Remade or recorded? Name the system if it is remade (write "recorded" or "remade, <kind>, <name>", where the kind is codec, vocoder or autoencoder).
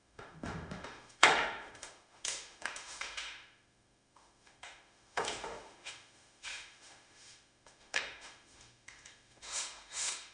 remade, autoencoder, DAC-VAE